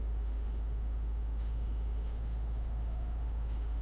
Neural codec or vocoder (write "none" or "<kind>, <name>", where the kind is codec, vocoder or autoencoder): autoencoder, DAC-VAE